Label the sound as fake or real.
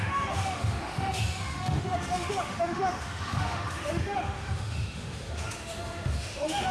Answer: fake